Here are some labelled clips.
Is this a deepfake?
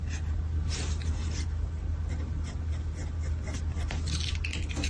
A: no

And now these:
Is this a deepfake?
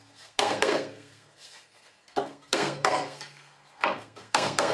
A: yes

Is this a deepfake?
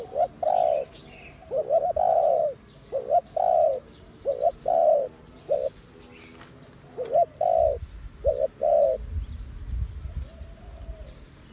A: no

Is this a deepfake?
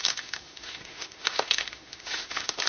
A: yes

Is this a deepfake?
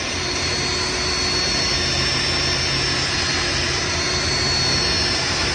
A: no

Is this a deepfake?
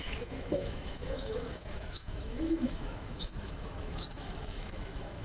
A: yes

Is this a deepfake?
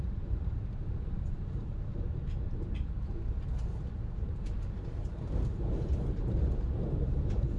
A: yes